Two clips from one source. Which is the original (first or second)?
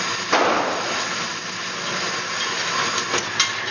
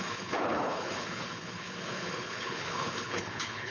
first